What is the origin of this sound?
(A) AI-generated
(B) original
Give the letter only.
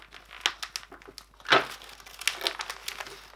B